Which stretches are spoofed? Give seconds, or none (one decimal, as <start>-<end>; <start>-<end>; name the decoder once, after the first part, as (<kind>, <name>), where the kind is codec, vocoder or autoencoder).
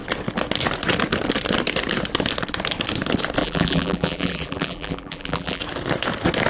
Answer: 3.4-5.6 (vocoder, BigVGAN v2)